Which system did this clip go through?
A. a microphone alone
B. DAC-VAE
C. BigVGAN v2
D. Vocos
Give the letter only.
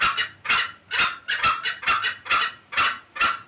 A